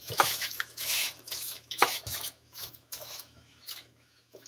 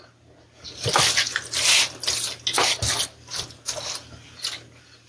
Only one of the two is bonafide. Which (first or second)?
second